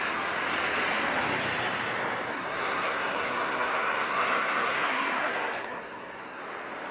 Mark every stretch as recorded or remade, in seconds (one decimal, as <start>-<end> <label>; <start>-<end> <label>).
0.0-2.3 recorded; 2.3-6.4 remade; 6.4-6.9 recorded